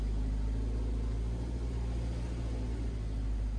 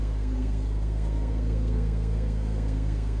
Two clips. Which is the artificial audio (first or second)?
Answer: second